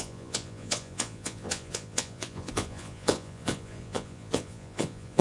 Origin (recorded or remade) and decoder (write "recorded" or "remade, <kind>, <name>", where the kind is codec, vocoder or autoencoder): remade, vocoder, Vocos